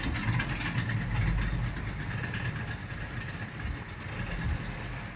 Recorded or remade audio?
recorded